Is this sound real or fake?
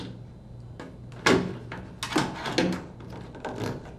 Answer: real